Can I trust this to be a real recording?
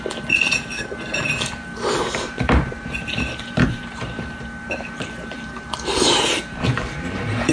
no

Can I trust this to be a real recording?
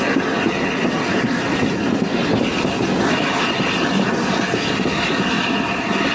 yes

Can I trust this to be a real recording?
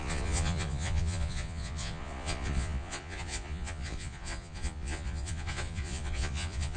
no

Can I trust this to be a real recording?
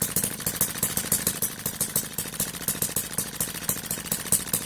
yes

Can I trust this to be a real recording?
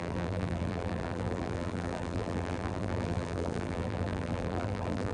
no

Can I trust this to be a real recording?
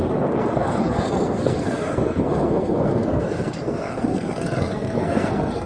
no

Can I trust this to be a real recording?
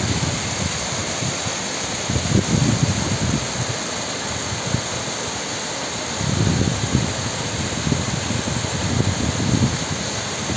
yes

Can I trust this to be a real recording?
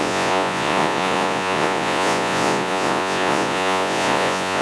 no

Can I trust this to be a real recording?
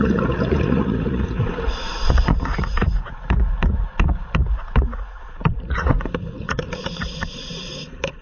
no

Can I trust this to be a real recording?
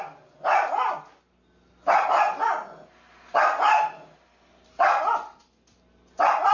yes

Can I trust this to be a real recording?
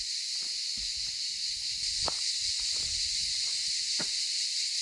yes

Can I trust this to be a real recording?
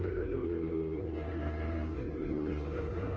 no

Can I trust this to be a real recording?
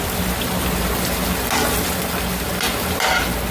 yes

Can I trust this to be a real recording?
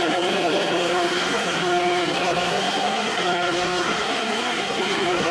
no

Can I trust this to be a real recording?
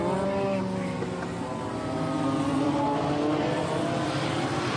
yes